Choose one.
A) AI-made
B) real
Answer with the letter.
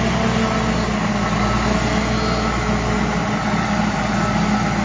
B